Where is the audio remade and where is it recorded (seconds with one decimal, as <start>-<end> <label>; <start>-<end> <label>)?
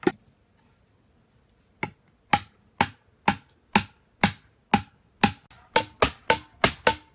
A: 0.0-7.1 recorded